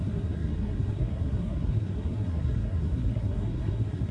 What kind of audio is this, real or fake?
fake